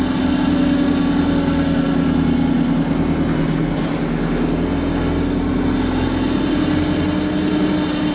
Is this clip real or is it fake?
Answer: real